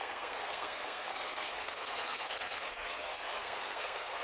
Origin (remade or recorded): remade